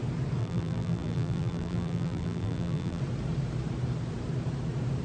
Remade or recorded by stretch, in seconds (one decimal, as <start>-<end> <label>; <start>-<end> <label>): 0.0-0.4 recorded; 0.4-3.0 remade; 3.0-5.0 recorded